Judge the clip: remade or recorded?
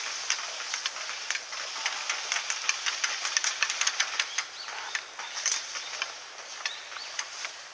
recorded